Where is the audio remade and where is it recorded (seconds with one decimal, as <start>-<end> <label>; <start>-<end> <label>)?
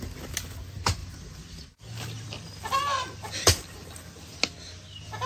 0.0-1.0 recorded; 1.0-4.2 remade; 4.2-5.3 recorded